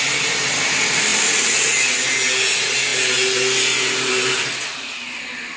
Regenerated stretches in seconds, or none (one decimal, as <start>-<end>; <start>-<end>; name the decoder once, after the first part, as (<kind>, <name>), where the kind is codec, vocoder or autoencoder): 1.1-1.8 (vocoder, BigVGAN v2)